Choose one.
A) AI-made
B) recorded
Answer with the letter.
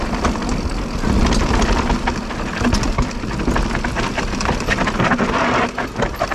B